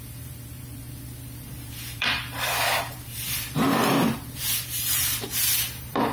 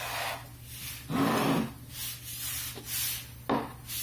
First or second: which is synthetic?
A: first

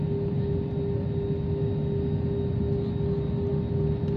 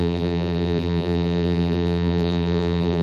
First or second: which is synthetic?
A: second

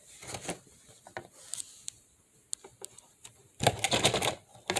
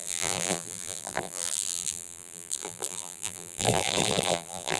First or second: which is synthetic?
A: second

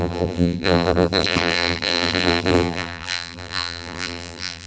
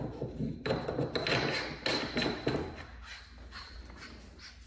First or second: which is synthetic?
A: first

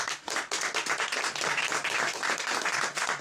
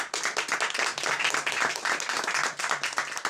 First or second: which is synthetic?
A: first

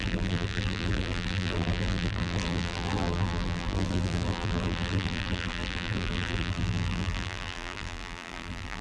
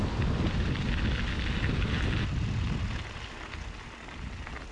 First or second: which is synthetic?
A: first